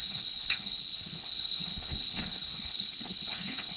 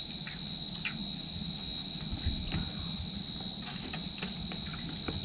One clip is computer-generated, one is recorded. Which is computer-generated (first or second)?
first